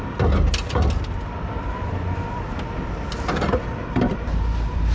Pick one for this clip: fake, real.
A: real